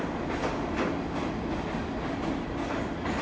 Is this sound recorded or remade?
recorded